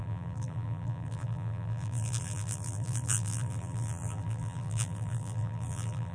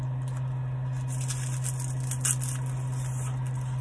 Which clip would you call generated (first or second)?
first